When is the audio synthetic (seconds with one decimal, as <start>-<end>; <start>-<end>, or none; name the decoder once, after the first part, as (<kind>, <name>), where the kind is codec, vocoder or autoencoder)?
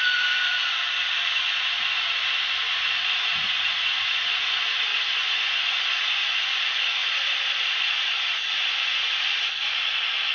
0.0-0.6 (vocoder, Vocos); 1.5-10.3